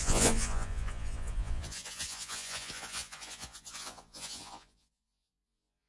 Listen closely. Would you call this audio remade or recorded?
remade